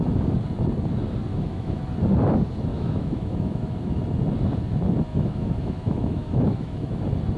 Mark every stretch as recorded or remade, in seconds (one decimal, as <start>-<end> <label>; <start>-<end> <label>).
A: 0.0-1.3 recorded; 1.3-1.8 remade; 1.8-2.7 recorded; 2.7-4.0 remade; 4.0-5.1 recorded; 5.1-7.0 remade; 7.0-7.4 recorded